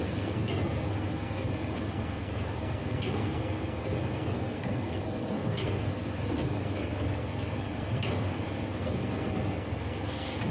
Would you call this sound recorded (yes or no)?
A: no